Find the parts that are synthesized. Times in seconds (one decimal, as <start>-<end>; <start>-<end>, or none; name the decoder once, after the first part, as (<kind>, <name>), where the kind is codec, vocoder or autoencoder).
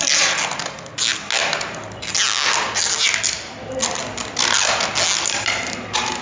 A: none